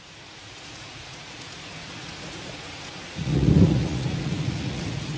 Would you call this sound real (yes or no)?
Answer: no